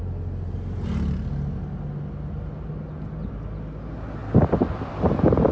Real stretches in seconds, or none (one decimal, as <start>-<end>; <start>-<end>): 0.0-5.5